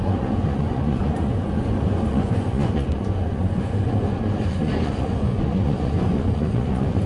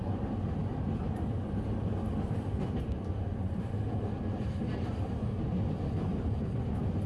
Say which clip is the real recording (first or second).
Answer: second